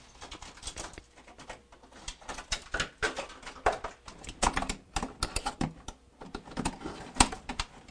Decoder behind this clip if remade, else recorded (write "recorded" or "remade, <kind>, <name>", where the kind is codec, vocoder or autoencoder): recorded